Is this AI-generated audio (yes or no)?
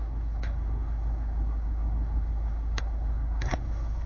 yes